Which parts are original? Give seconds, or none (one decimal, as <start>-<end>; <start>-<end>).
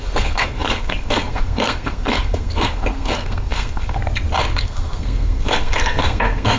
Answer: 4.0-4.6